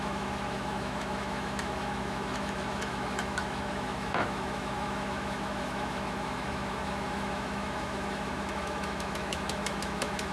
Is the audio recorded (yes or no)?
no